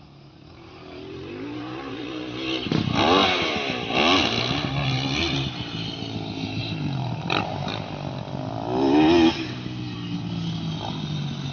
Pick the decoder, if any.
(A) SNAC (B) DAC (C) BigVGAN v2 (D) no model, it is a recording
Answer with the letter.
D